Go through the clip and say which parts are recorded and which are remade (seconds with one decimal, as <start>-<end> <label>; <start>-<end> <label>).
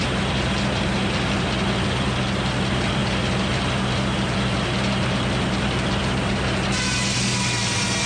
0.0-8.1 recorded